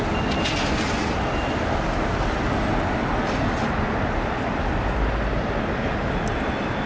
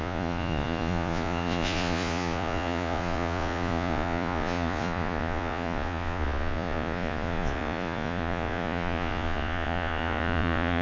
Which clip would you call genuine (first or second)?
first